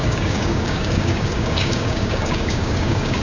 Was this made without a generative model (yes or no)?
no